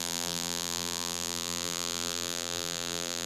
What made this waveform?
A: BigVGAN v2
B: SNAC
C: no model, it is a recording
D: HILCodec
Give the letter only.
A